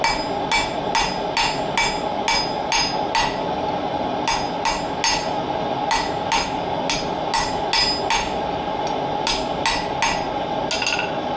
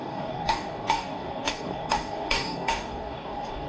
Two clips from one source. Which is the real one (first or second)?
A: first